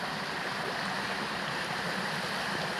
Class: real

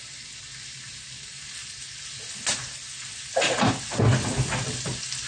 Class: real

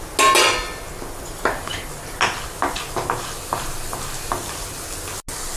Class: real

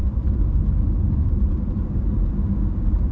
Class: fake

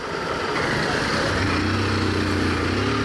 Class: real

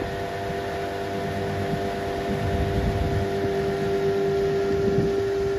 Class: real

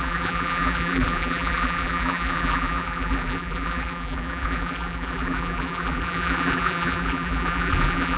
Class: fake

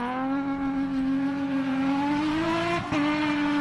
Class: real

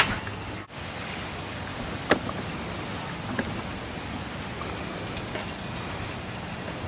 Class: real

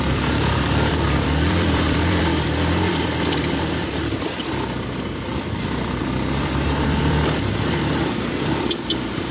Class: fake